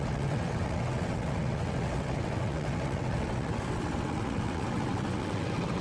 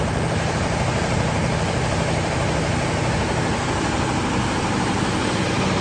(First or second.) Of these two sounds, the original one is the second